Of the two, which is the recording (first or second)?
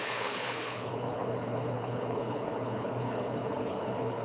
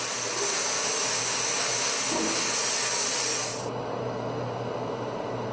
second